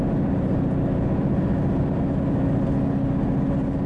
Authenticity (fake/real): real